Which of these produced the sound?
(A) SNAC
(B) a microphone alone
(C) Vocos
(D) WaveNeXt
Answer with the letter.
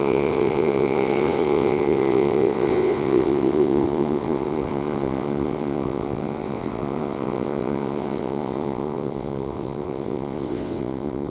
D